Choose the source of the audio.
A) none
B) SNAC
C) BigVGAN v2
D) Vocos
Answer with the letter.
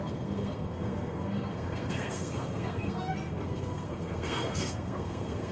B